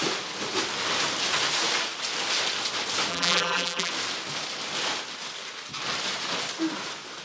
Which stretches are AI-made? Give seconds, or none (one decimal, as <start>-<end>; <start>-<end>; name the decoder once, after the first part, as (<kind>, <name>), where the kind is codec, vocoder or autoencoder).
3.1-3.9 (vocoder, BigVGAN v2)